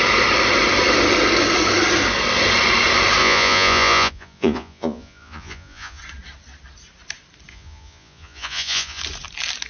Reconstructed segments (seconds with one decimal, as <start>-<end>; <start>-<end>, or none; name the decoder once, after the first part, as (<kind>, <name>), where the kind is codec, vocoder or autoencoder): 3.2-6.0 (vocoder, Vocos); 7.5-9.0